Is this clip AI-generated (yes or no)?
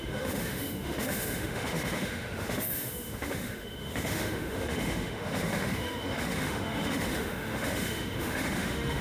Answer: yes